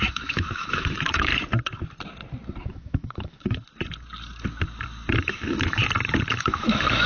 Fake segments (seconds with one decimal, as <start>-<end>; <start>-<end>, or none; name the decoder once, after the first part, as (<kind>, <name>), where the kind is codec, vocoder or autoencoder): 0.0-1.3 (autoencoder, DAC-VAE); 2.7-3.6; 5.2-5.8; 6.3-7.1